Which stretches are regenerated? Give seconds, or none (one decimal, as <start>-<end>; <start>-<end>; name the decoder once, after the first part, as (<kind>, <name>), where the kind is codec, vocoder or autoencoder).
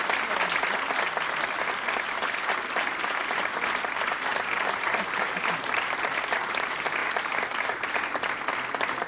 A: 2.2-3.4 (vocoder, BigVGAN v2); 4.3-5.9; 7.0-8.5